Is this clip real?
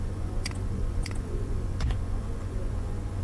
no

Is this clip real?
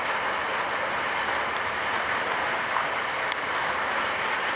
yes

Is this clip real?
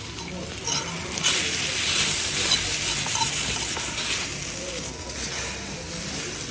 yes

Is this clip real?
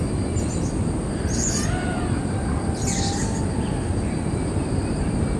yes